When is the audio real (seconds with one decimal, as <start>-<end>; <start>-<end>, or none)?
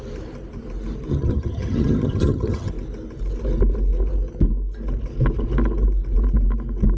0.0-1.1; 2.7-7.0